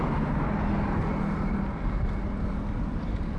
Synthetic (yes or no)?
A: no